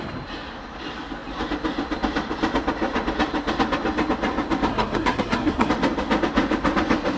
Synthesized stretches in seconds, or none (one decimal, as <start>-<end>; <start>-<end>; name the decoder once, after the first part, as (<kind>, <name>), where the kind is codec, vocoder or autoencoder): 4.7-5.7 (codec, SNAC)